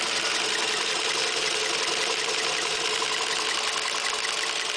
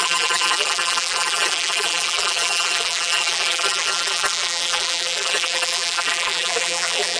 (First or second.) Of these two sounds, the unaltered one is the first